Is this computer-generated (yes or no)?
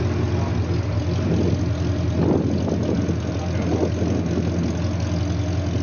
no